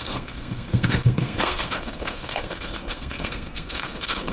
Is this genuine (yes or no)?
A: no